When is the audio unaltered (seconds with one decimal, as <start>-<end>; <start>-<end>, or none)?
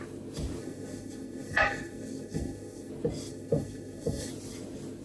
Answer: 0.0-0.6; 2.9-3.3; 4.3-5.0